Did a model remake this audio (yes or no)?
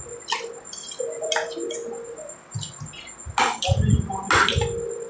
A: no